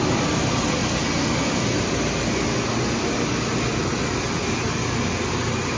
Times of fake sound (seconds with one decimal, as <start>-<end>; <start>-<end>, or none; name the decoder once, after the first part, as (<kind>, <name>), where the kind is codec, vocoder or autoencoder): none